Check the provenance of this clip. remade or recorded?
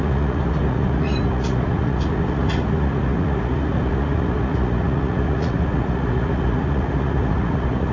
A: remade